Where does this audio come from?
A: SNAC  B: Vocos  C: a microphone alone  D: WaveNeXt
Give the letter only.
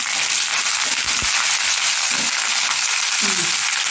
C